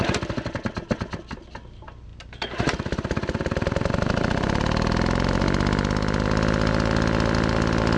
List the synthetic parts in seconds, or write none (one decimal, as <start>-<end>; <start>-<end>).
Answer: none